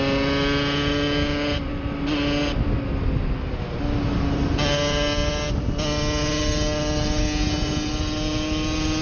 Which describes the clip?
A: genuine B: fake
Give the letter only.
A